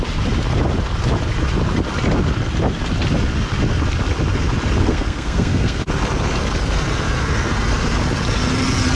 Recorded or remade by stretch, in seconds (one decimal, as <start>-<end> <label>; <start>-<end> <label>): 0.0-4.8 recorded; 4.8-5.8 remade; 5.8-9.0 recorded